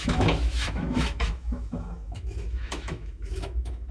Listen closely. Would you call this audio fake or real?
fake